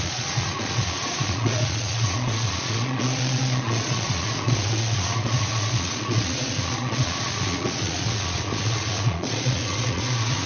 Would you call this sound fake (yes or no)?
yes